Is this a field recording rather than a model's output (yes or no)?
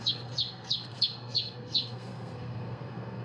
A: no